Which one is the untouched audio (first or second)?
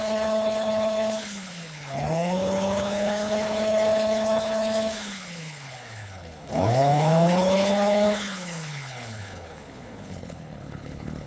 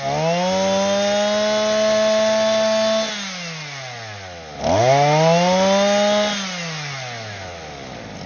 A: second